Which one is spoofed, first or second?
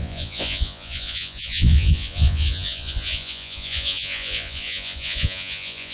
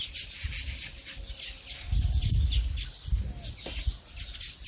first